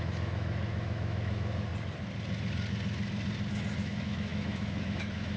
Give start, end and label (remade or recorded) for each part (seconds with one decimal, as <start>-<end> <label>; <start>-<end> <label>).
0.0-1.7 remade; 1.7-3.5 recorded; 3.5-5.4 remade